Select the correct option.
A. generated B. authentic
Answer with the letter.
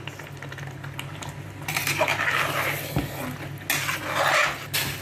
B